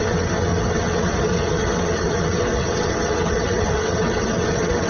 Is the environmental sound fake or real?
fake